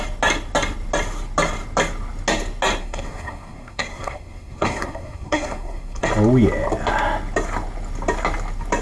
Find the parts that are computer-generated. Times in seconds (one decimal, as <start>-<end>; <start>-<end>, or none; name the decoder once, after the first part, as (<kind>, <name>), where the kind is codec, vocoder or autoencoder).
2.8-6.1 (codec, SNAC)